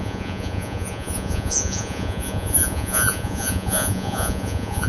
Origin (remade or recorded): remade